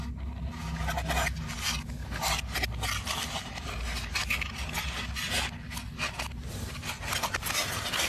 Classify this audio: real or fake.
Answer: real